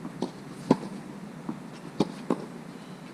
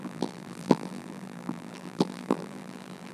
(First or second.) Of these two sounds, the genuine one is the first